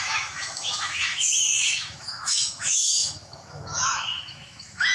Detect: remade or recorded remade